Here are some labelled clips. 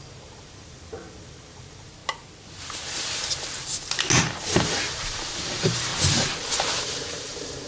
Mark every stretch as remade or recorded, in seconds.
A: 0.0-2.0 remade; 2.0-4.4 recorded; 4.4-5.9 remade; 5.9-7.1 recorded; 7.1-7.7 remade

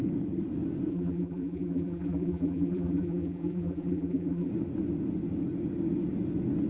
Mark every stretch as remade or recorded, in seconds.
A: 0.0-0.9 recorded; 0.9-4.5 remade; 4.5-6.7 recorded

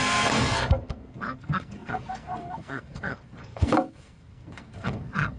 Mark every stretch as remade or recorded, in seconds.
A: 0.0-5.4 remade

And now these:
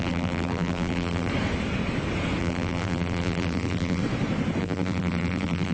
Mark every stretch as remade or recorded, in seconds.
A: 0.0-1.3 remade; 1.3-2.4 recorded; 2.4-4.0 remade; 4.0-4.6 recorded; 4.6-5.7 remade

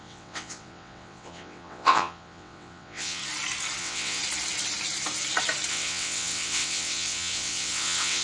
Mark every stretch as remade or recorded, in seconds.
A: 0.0-3.2 remade; 3.2-3.8 recorded; 3.8-4.2 remade; 4.2-5.7 recorded; 5.7-8.2 remade

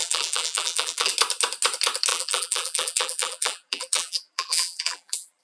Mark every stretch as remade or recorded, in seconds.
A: 0.0-1.1 remade; 1.1-2.1 recorded; 2.1-5.4 remade

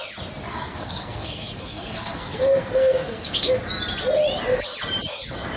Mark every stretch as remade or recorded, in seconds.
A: 0.0-0.5 recorded; 0.5-3.6 remade; 3.6-5.6 recorded

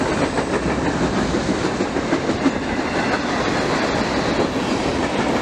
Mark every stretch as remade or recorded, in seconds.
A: 0.0-4.9 recorded; 4.9-5.4 remade